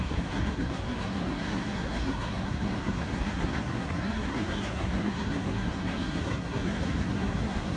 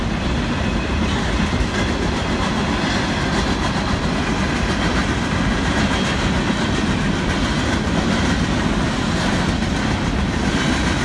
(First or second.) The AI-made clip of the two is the first